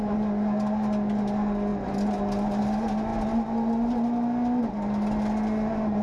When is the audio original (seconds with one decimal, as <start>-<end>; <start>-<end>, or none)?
0.0-6.0